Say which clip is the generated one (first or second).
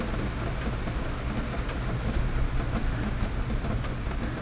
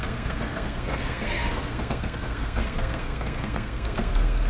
second